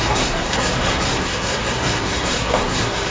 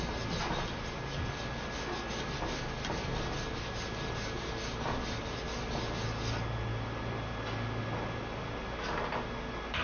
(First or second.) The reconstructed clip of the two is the first